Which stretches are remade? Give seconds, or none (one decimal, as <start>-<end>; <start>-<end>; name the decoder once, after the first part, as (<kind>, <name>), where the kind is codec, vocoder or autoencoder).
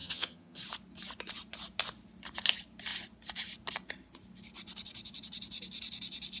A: 0.0-0.6 (vocoder, HiFi-GAN)